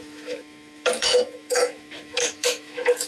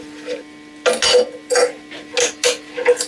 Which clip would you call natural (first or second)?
second